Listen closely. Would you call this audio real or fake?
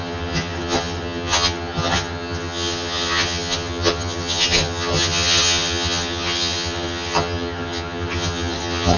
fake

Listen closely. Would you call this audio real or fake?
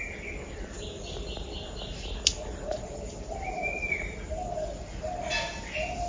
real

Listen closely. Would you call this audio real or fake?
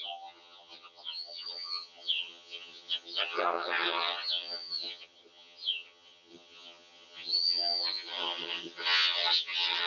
fake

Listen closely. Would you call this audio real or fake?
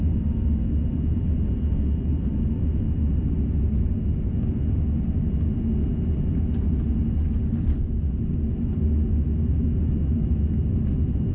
real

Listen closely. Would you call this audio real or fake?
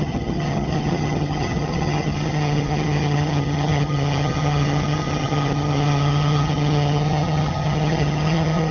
fake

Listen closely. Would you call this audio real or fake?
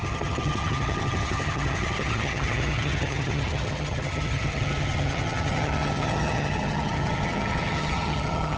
fake